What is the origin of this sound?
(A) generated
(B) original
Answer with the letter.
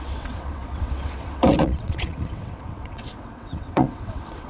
A